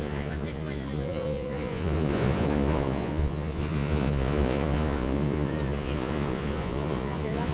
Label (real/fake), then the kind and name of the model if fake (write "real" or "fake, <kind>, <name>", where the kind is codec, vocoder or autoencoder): fake, vocoder, Vocos